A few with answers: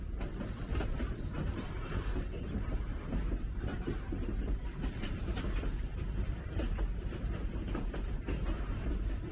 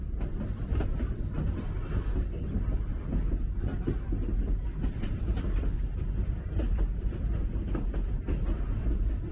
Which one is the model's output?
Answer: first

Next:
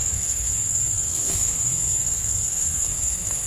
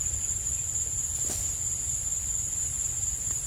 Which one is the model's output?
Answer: first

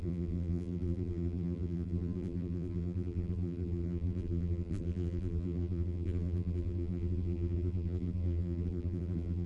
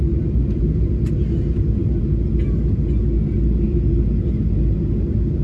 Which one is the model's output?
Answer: first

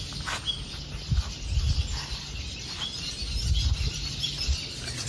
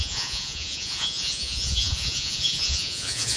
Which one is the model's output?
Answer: second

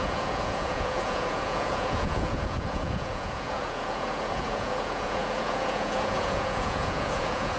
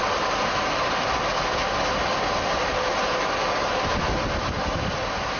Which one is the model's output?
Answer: first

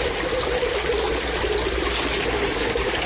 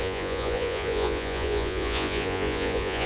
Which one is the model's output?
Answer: second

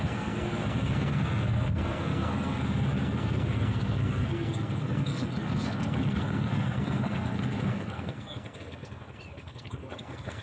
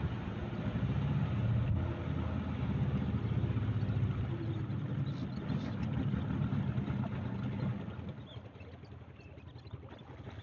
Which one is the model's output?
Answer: first